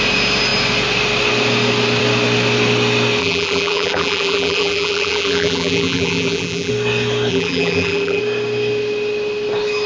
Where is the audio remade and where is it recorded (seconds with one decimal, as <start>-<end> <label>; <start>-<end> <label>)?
0.0-3.2 recorded; 3.2-6.7 remade; 6.7-7.3 recorded; 7.3-8.2 remade; 8.2-9.9 recorded